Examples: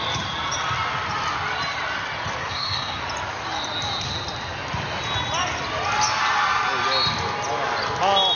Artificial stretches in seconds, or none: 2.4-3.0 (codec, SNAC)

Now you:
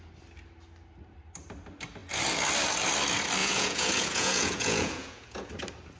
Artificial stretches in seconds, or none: 3.4-5.5 (vocoder, Vocos)

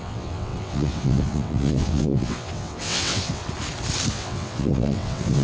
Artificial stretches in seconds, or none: 0.0-3.4 (vocoder, WaveNeXt); 4.1-5.4

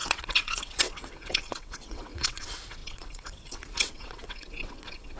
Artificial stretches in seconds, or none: 0.0-5.2 (vocoder, WaveNeXt)

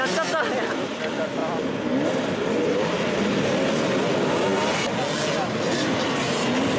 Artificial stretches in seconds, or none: 1.4-3.4 (vocoder, BigVGAN v2)